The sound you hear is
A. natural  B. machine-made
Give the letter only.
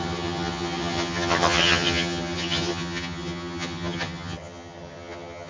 B